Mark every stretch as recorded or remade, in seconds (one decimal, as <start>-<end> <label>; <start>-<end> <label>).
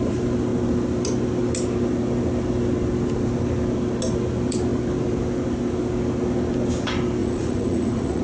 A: 0.0-7.2 recorded; 7.2-8.2 remade